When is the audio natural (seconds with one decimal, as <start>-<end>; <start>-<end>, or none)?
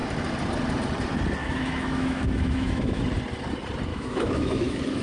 0.0-1.4; 3.0-3.9